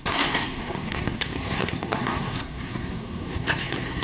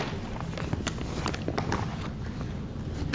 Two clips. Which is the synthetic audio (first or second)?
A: first